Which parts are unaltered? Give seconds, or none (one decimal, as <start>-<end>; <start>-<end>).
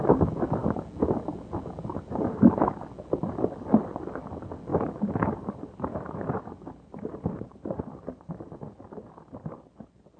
0.0-1.9; 2.8-4.7; 8.3-10.2